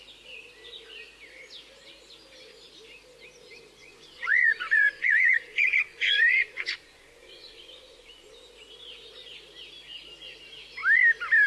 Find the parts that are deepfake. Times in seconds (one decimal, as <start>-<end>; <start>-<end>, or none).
3.8-8.4